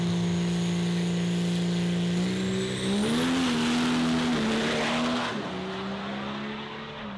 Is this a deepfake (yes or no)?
no